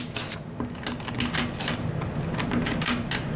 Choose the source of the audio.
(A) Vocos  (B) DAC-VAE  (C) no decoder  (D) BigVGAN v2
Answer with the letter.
C